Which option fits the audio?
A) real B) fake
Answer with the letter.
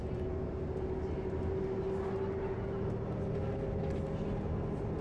A